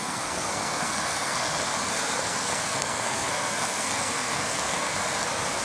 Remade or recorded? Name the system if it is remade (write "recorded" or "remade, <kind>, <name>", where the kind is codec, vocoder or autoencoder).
remade, codec, SNAC